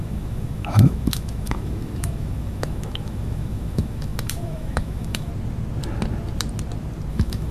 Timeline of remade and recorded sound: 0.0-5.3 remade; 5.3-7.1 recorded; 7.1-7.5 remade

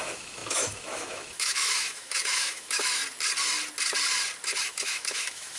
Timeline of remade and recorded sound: 0.0-3.0 remade; 3.0-4.6 recorded; 4.6-5.6 remade

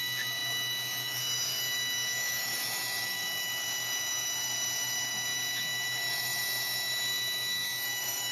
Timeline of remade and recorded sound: 0.0-8.3 remade

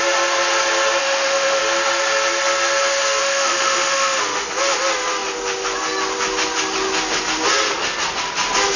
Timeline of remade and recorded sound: 0.0-1.0 recorded; 1.0-1.6 remade; 1.6-3.2 recorded; 3.2-4.5 remade; 4.5-8.8 recorded

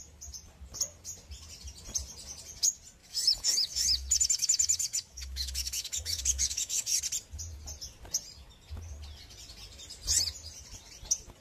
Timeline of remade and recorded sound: 0.0-3.0 recorded; 3.0-7.0 remade; 7.0-11.4 recorded

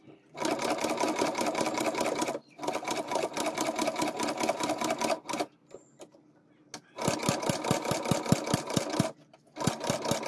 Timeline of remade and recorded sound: 0.0-10.3 recorded

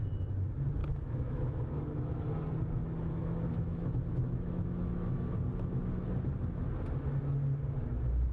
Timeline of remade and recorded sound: 0.0-0.8 recorded; 0.8-2.3 remade; 2.3-3.2 recorded; 3.2-5.3 remade; 5.3-8.3 recorded